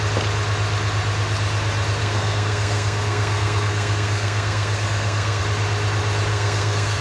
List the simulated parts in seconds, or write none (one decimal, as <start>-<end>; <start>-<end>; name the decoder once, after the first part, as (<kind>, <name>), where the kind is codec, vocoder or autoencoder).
2.0-5.4 (codec, SNAC); 6.3-7.0